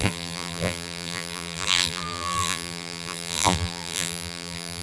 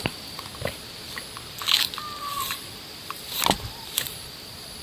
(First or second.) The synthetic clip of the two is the first